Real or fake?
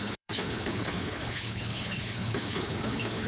fake